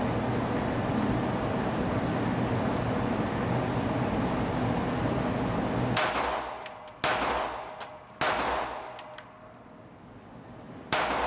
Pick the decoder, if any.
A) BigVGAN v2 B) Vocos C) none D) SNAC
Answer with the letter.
C